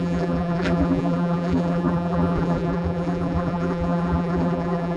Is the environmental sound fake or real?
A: fake